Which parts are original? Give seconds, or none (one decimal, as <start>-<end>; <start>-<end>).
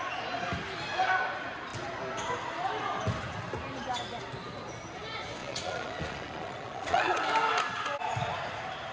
0.0-5.4; 7.2-8.9